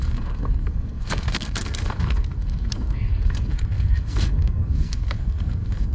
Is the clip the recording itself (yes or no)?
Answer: no